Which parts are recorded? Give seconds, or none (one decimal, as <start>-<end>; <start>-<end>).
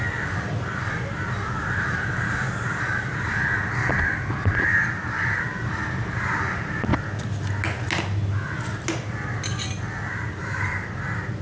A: 6.9-10.4